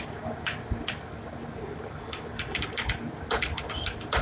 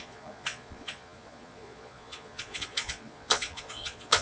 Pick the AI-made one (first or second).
second